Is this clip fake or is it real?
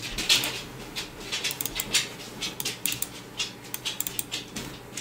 real